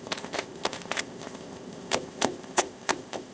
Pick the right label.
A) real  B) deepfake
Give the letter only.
B